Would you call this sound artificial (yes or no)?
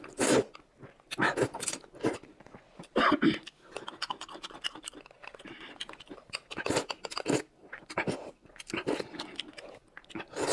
no